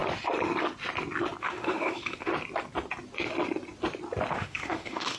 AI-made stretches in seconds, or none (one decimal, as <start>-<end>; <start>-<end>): 1.4-2.3; 4.3-5.2